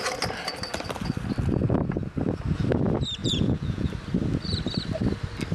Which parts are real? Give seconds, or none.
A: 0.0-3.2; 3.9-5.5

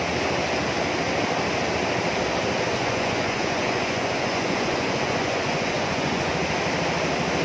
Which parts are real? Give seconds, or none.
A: 0.0-2.7; 6.3-7.4

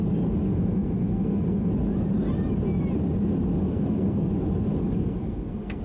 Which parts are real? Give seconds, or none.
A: 0.0-0.5; 1.7-3.6; 4.3-4.8